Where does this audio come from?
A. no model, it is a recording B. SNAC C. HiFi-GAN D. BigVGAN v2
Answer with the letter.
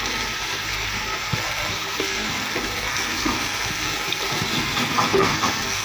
B